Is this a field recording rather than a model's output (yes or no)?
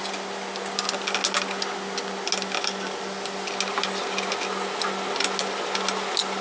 yes